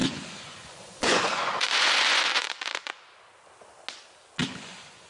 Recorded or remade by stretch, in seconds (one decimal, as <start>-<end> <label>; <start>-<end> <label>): 0.0-3.0 remade; 3.0-4.4 recorded; 4.4-5.1 remade

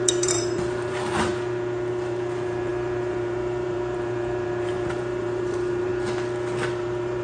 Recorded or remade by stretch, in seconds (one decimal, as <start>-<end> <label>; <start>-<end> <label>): 0.0-1.3 remade; 1.3-1.9 recorded; 1.9-5.9 remade; 5.9-6.7 recorded; 6.7-7.2 remade

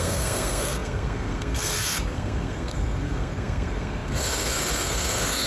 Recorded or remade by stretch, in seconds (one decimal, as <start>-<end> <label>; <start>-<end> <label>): 0.0-5.5 remade

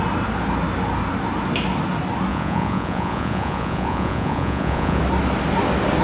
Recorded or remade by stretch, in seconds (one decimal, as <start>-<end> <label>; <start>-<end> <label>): 0.0-2.3 recorded; 2.3-5.0 remade; 5.0-6.0 recorded

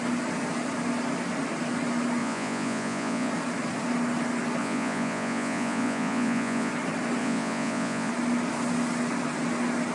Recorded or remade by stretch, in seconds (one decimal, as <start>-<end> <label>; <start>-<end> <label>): 0.0-2.2 recorded; 2.2-3.3 remade; 3.3-4.6 recorded; 4.6-6.7 remade; 6.7-7.2 recorded; 7.2-8.1 remade; 8.1-9.9 recorded

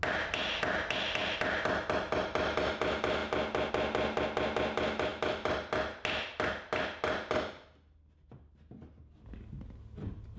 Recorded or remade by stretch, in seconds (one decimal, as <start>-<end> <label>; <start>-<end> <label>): 0.0-10.4 recorded